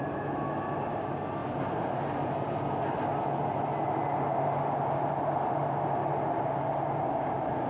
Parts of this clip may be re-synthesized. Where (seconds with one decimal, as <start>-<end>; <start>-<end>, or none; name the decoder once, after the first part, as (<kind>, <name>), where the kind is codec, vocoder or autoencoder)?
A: none